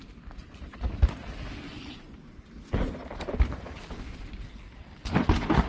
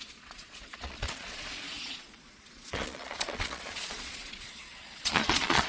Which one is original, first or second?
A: first